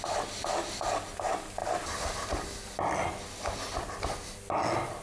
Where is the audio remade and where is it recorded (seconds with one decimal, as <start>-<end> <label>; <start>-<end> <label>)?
0.0-5.0 recorded